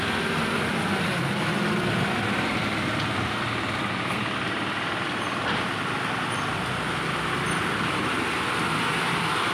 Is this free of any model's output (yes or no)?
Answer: yes